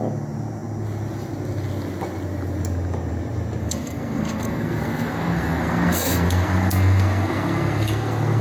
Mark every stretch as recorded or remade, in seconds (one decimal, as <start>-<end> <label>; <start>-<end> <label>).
0.0-3.6 recorded; 3.6-8.4 remade